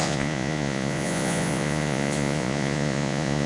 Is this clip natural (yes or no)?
no